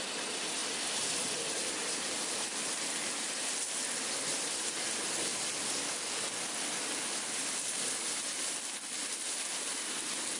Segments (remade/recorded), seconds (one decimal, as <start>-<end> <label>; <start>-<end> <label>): 0.0-10.4 recorded